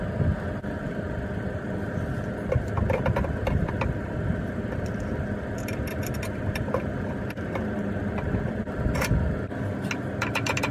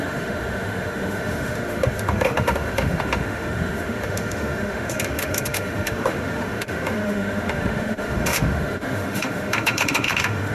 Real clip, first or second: first